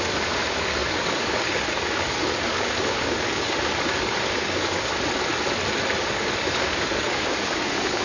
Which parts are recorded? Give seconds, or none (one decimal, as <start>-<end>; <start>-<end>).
4.9-6.0